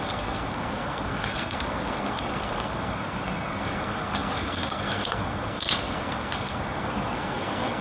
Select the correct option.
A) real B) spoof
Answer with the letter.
B